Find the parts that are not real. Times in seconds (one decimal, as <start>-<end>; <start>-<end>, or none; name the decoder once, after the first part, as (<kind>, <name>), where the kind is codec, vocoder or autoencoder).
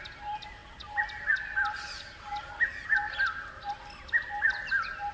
none